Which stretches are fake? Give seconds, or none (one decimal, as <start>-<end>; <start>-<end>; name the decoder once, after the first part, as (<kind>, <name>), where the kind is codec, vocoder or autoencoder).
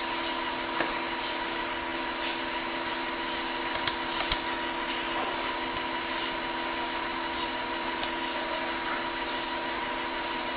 none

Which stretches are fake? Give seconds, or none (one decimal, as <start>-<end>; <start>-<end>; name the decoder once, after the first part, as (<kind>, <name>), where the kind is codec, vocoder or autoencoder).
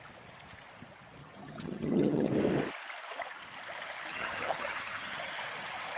1.2-2.3 (vocoder, HiFi-GAN); 4.1-5.3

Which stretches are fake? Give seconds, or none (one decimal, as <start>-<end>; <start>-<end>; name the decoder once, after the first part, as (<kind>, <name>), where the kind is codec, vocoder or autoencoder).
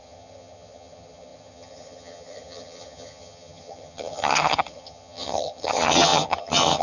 0.0-6.8 (vocoder, HiFi-GAN)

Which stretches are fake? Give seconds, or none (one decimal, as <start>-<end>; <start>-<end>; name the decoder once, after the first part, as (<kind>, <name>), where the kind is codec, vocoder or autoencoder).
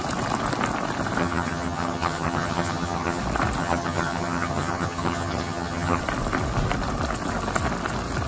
1.2-3.2 (vocoder, HiFi-GAN); 3.6-6.0